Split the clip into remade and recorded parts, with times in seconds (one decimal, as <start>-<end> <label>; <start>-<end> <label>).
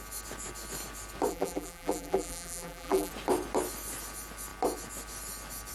0.0-1.3 recorded; 1.3-3.1 remade; 3.1-5.7 recorded